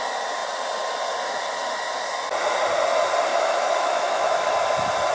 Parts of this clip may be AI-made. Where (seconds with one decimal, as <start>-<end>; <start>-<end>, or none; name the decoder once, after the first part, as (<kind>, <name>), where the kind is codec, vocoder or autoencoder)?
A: 3.3-4.5 (autoencoder, DAC-VAE)